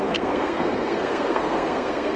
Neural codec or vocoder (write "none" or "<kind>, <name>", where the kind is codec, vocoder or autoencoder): codec, SNAC